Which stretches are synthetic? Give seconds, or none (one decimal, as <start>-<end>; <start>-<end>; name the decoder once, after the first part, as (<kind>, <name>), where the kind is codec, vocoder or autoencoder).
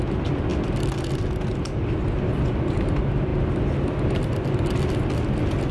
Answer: none